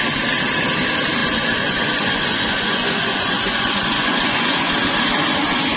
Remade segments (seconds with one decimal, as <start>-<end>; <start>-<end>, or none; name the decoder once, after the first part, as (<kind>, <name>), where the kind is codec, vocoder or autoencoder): 1.2-4.7 (vocoder, Vocos)